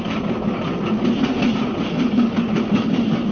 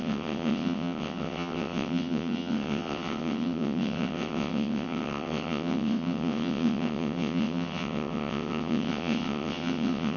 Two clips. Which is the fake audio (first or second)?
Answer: second